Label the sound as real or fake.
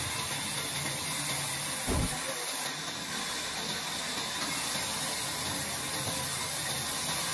real